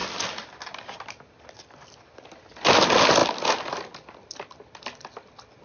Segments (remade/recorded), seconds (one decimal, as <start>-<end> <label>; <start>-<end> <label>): 0.0-5.6 recorded